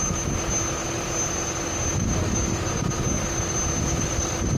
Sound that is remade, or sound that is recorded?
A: recorded